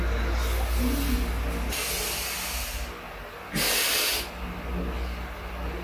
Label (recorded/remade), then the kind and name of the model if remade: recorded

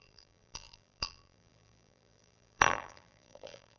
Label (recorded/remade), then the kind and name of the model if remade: remade, vocoder, BigVGAN v2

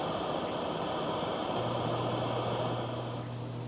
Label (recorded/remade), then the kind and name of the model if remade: recorded